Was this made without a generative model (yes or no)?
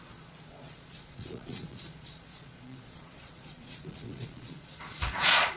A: no